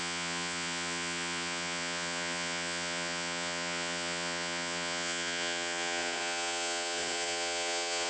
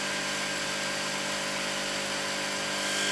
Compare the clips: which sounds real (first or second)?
second